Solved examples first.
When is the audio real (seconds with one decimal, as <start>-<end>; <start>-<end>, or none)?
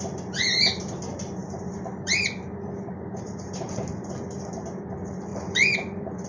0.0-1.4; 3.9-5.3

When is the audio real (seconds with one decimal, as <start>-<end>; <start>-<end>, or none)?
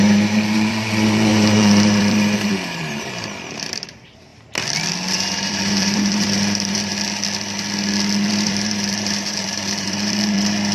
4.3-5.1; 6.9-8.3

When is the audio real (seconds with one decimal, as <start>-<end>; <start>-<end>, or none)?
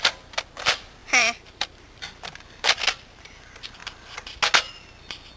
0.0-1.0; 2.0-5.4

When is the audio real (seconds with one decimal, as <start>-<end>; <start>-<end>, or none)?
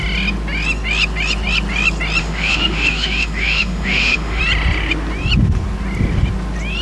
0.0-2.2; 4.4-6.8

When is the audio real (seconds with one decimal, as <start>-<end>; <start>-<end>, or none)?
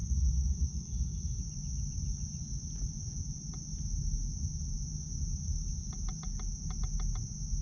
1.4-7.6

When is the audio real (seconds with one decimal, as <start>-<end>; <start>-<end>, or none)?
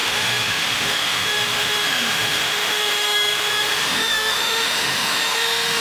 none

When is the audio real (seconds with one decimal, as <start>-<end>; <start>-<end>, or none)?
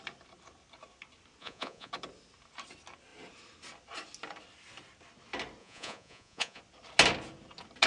0.0-1.4; 1.9-5.6; 6.6-7.9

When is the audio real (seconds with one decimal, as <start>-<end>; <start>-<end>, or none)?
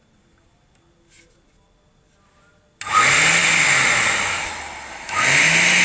0.0-3.4; 4.5-5.8